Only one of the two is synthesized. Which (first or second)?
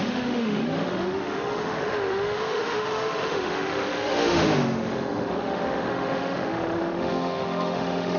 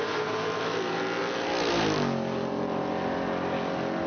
first